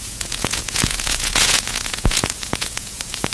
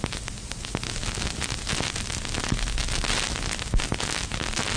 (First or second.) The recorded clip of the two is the second